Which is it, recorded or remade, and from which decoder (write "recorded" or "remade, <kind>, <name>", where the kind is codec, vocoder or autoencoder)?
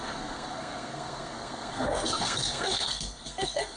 remade, codec, SNAC